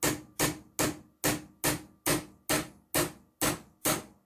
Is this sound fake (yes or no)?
no